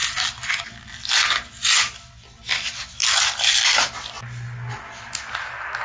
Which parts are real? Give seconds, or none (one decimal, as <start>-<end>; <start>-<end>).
0.0-5.8

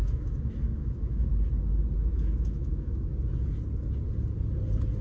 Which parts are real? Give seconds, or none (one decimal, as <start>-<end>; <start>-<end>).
1.3-2.1; 3.1-5.0

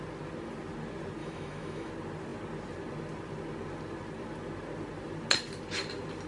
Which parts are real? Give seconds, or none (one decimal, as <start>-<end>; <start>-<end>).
0.0-1.2; 1.9-6.3

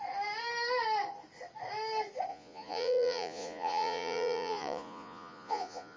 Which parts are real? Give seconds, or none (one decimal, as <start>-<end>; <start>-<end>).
0.0-2.3

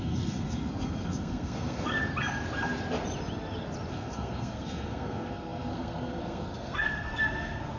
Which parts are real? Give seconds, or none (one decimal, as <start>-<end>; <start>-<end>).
1.9-3.9

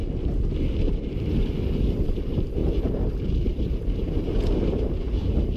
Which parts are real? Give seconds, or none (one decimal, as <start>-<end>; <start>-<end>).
2.2-2.6; 3.1-3.5; 4.8-5.6

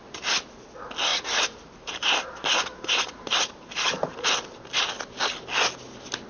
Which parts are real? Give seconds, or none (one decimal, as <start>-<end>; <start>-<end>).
0.0-1.1; 4.9-6.3